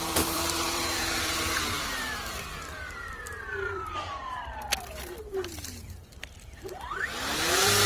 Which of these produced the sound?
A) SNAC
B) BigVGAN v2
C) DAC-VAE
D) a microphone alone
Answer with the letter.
B